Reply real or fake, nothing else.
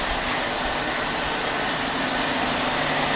real